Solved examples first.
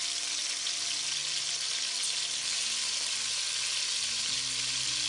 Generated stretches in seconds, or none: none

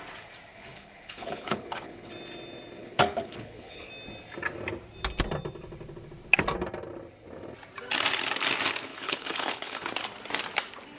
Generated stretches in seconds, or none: 0.5-2.1; 2.8-3.9; 8.9-9.9

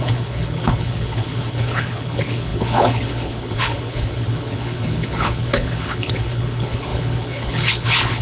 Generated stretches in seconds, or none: 0.0-8.2

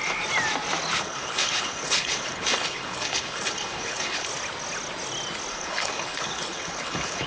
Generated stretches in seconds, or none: 1.0-4.3; 5.5-7.3